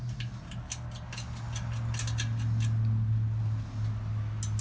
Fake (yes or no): no